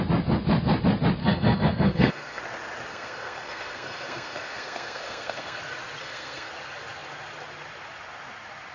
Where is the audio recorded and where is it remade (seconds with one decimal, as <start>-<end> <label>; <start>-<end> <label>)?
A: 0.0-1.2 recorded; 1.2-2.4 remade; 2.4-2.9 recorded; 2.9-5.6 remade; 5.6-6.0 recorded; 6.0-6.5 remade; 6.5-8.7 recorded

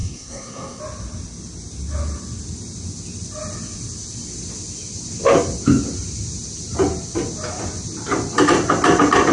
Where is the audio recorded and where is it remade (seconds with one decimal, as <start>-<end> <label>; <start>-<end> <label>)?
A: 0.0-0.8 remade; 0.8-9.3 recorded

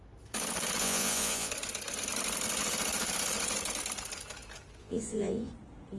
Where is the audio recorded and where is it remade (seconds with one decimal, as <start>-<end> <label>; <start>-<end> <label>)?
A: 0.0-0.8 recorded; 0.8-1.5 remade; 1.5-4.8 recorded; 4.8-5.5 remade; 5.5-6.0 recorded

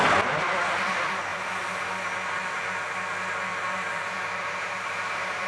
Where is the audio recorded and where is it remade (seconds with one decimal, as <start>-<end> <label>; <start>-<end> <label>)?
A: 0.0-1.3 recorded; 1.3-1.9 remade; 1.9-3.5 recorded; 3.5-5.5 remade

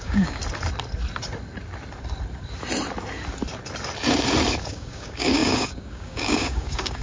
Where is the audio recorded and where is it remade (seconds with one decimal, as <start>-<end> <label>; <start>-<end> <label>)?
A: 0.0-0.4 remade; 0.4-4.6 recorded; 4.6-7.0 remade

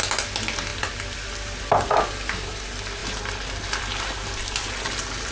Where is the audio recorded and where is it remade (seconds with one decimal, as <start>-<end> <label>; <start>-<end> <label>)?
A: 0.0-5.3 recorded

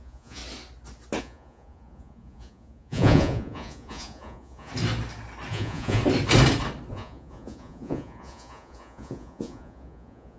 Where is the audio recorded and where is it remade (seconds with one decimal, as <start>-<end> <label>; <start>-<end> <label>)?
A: 0.0-0.4 remade; 0.4-1.2 recorded; 1.2-4.7 remade; 4.7-5.5 recorded; 5.5-6.0 remade; 6.0-6.9 recorded; 6.9-10.4 remade

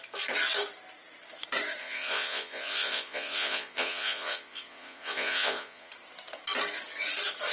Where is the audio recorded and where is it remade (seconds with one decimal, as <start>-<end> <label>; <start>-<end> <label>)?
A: 0.0-1.8 recorded; 1.8-5.9 remade; 5.9-7.5 recorded